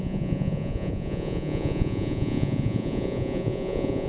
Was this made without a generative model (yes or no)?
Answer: no